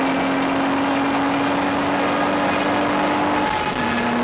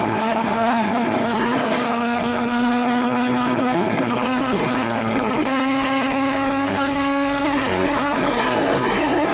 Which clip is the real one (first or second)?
first